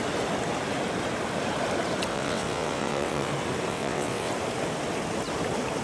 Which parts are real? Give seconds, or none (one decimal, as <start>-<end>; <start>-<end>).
0.0-2.1; 3.3-3.7; 4.3-5.8